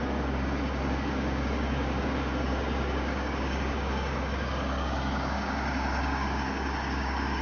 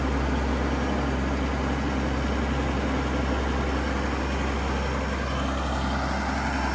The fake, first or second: first